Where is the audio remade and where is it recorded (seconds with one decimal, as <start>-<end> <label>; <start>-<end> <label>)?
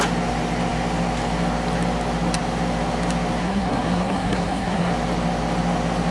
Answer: 0.0-3.4 recorded; 3.4-4.9 remade; 4.9-6.1 recorded